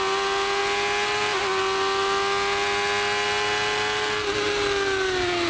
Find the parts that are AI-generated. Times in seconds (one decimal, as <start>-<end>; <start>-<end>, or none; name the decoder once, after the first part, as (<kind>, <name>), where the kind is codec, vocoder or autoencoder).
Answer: none